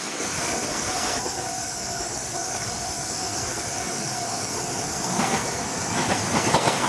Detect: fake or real fake